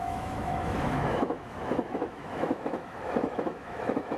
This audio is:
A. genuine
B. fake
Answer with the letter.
B